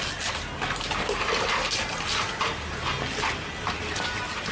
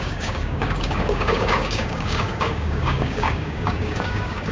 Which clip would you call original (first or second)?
first